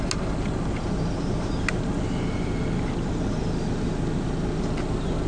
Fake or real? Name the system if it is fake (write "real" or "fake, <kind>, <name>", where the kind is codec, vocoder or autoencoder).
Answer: real